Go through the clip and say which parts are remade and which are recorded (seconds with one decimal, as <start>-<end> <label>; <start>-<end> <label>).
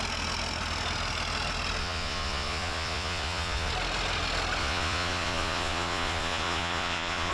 0.0-1.8 recorded; 1.8-3.7 remade; 3.7-4.6 recorded; 4.6-7.3 remade